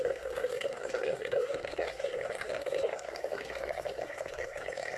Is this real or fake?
fake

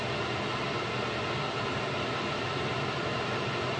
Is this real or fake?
real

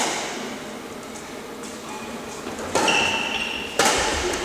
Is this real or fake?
real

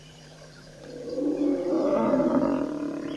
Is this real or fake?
fake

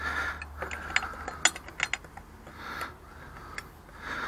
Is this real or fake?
real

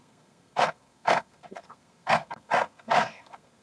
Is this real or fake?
fake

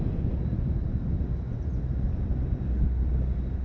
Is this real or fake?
real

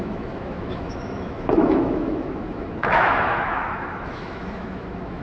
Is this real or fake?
fake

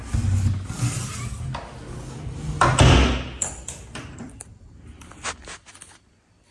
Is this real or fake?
real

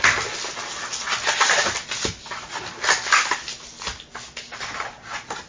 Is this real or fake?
real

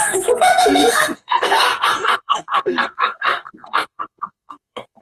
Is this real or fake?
fake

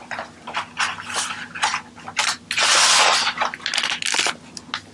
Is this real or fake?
real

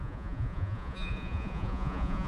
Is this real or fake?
fake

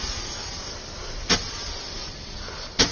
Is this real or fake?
real